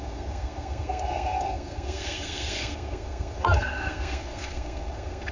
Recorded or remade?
remade